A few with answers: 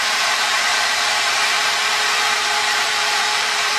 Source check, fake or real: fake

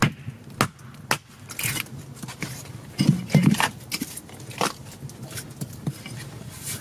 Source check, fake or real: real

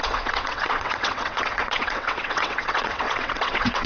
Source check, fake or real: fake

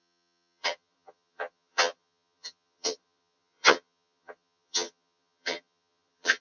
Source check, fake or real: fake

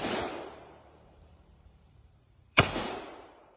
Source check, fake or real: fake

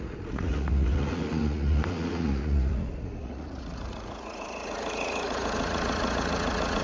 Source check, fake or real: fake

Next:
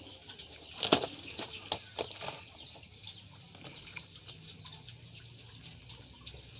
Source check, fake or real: real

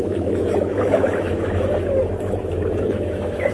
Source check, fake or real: fake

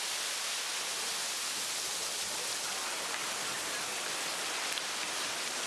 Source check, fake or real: real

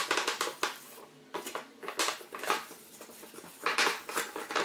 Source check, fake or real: real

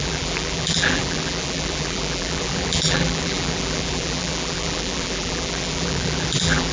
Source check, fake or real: fake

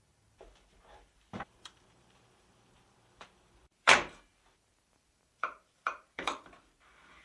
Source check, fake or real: fake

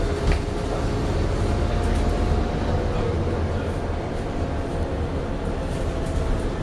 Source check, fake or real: real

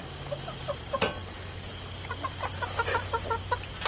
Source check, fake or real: real